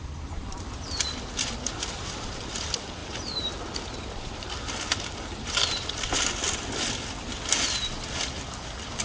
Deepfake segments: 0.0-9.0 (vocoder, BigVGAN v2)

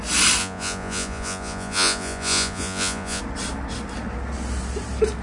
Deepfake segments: 0.4-3.2 (vocoder, Vocos)

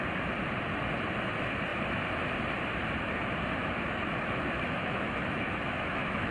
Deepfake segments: 3.6-6.3 (autoencoder, DAC-VAE)